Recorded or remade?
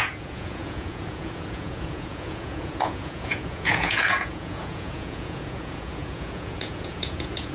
remade